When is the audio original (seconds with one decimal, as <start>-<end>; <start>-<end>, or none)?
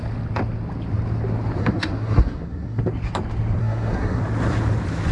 0.0-1.6; 2.8-3.6; 4.2-5.1